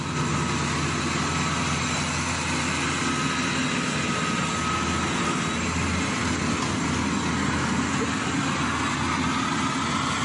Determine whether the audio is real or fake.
real